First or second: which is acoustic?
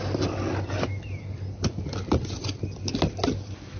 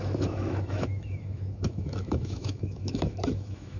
first